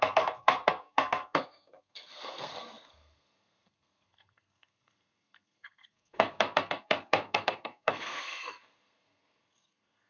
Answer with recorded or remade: remade